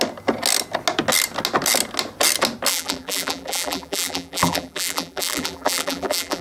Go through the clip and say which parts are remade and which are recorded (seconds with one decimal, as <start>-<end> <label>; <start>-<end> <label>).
0.0-2.7 recorded; 2.7-6.4 remade